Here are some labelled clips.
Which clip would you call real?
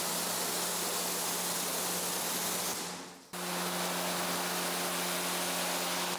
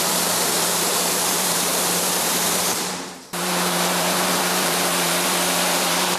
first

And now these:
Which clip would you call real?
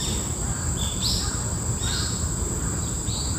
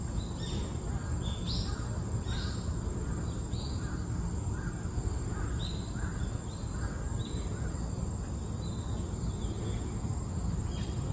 second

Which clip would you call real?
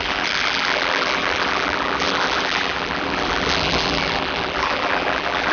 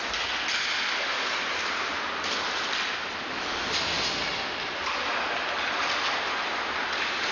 second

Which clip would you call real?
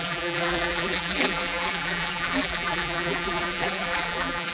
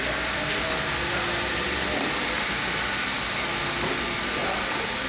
second